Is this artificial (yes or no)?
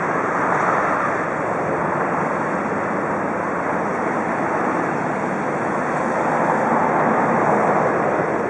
no